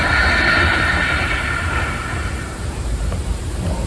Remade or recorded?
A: recorded